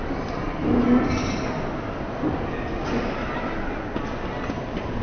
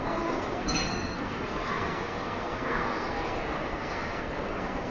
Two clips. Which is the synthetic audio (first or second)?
second